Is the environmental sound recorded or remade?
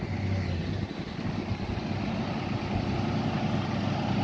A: recorded